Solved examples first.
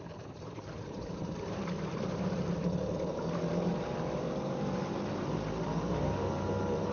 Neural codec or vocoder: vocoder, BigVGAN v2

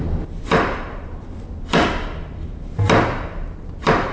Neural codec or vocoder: vocoder, BigVGAN v2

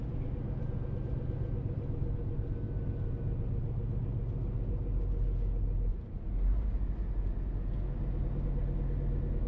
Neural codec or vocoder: none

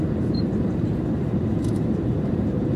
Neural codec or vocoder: vocoder, BigVGAN v2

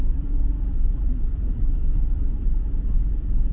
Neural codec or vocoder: vocoder, BigVGAN v2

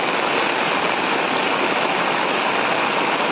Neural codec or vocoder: none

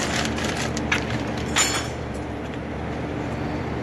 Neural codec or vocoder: vocoder, BigVGAN v2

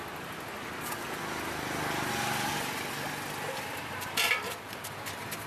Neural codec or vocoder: none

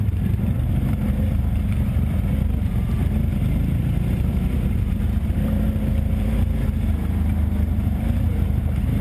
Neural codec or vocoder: vocoder, BigVGAN v2